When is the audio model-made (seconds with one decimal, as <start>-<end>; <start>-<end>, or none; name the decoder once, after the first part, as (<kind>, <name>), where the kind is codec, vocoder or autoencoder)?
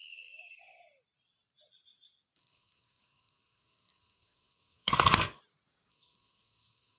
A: 0.0-0.6 (codec, SNAC); 2.4-5.4; 5.9-7.0